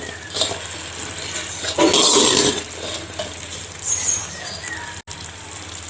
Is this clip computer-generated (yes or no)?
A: no